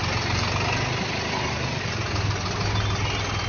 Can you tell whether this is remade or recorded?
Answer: recorded